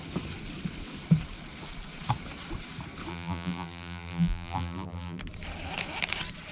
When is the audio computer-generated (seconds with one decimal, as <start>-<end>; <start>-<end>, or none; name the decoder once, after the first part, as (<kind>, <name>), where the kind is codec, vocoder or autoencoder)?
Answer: 3.1-5.2 (vocoder, BigVGAN v2)